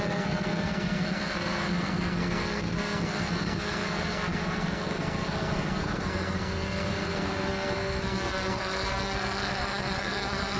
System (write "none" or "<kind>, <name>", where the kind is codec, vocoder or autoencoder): codec, SNAC